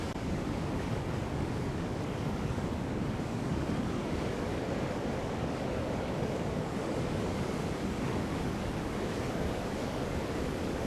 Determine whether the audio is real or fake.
fake